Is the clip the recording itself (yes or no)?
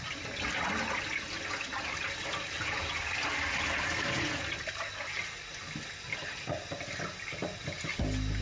yes